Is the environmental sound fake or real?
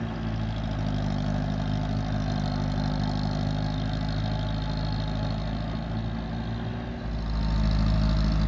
real